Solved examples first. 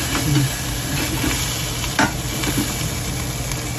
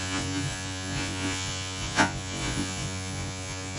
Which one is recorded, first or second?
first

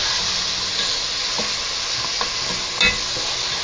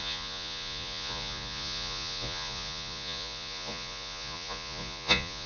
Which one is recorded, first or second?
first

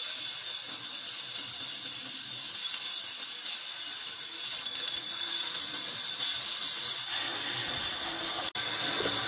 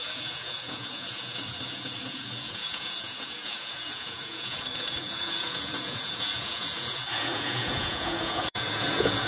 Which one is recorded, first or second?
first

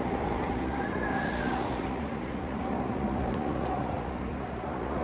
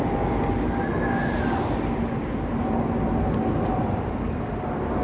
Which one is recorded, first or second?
second